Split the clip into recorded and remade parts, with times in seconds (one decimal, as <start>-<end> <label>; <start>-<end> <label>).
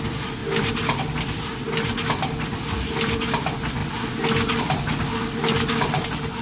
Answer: 0.0-6.4 recorded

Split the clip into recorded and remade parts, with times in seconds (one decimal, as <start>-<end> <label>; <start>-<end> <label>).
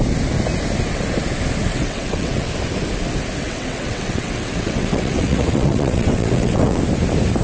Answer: 0.0-1.7 recorded; 1.7-2.5 remade; 2.5-3.4 recorded; 3.4-6.8 remade; 6.8-7.4 recorded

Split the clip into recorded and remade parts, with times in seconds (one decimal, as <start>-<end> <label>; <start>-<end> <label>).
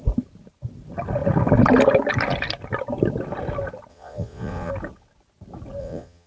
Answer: 0.0-3.9 recorded; 3.9-4.7 remade; 4.7-5.8 recorded; 5.8-6.3 remade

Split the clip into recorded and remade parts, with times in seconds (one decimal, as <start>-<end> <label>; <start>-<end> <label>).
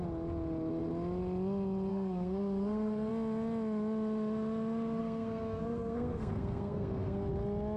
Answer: 0.0-1.9 recorded; 1.9-3.1 remade; 3.1-5.0 recorded; 5.0-7.3 remade; 7.3-7.8 recorded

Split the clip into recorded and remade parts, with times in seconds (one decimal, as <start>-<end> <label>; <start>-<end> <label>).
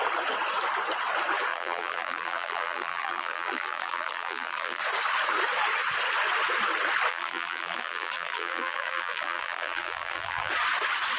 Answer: 0.0-1.5 recorded; 1.5-4.8 remade; 4.8-7.1 recorded; 7.1-10.5 remade; 10.5-11.2 recorded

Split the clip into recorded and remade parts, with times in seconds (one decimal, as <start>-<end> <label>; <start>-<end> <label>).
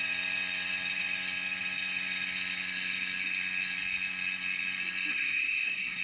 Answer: 0.0-5.1 recorded; 5.1-6.0 remade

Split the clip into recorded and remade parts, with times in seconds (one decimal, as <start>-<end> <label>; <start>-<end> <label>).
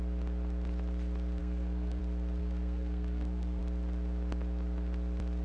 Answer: 0.0-1.4 recorded; 1.4-2.0 remade; 2.0-2.4 recorded; 2.4-3.6 remade; 3.6-5.4 recorded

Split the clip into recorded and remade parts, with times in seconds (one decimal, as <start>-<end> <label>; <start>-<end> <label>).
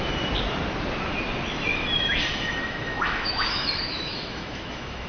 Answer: 0.0-1.7 recorded; 1.7-5.1 remade